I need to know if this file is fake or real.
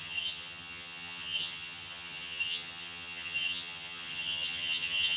fake